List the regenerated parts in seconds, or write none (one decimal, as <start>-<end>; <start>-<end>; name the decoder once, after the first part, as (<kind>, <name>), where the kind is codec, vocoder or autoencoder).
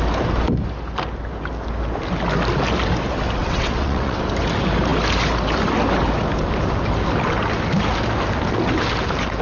3.4-4.2 (vocoder, WaveNeXt)